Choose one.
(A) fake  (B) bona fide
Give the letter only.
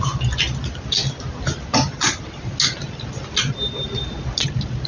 B